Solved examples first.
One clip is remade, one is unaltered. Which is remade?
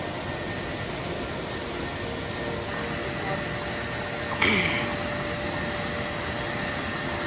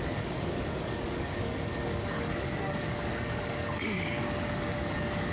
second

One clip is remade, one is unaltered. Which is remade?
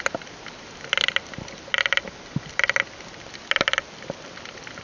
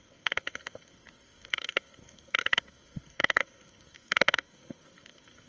second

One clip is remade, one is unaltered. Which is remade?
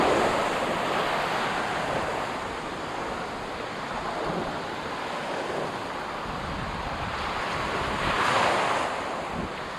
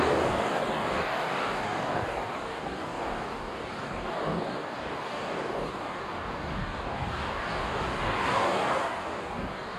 second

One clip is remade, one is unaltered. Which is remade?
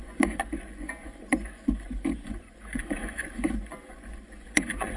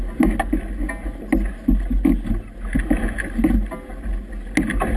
first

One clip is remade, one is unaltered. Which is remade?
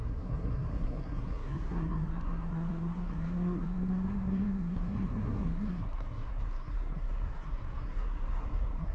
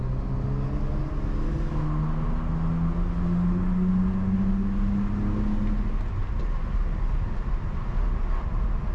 first